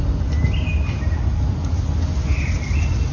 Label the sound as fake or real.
real